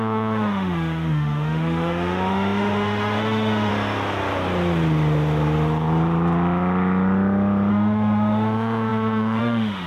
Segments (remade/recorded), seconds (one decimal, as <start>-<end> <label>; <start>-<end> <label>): 0.0-3.7 remade; 3.7-7.7 recorded; 7.7-9.9 remade